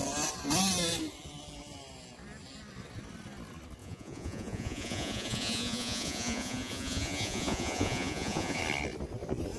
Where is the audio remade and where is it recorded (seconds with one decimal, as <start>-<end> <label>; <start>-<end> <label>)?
0.0-3.8 recorded; 3.8-8.6 remade; 8.6-9.6 recorded